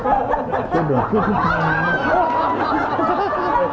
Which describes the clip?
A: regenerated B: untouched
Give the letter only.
B